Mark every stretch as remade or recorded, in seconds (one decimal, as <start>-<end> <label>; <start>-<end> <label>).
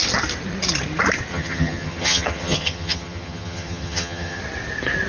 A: 0.0-1.3 recorded; 1.3-4.4 remade; 4.4-5.1 recorded